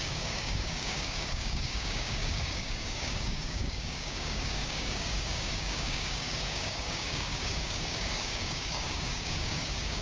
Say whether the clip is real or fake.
fake